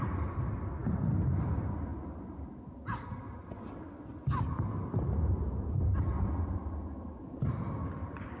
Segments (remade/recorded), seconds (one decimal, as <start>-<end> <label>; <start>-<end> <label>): 0.0-8.4 recorded